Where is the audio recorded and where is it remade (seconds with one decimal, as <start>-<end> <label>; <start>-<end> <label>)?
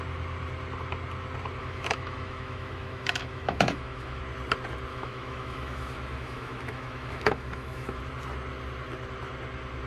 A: 0.0-1.6 recorded; 1.6-4.2 remade; 4.2-4.9 recorded; 4.9-8.0 remade; 8.0-9.9 recorded